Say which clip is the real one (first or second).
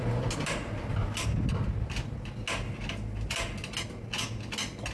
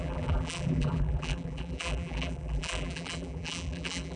first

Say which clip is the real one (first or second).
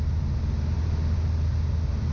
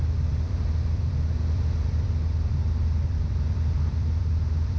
first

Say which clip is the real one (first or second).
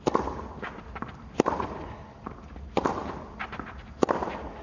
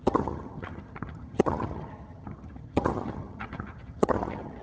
first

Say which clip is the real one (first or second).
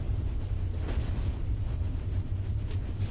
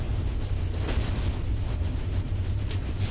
second